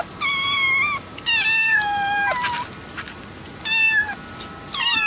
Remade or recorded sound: recorded